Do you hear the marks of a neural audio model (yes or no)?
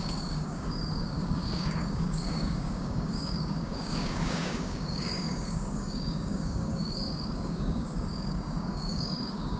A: yes